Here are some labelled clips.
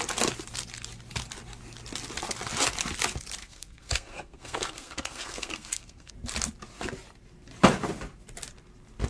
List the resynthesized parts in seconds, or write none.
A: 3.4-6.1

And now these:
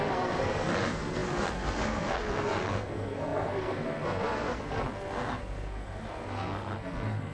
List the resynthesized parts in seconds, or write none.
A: 0.0-7.3

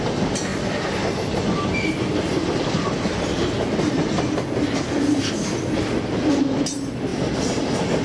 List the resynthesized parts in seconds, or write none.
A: none